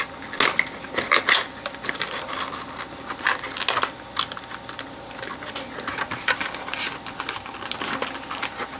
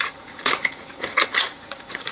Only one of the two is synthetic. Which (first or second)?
second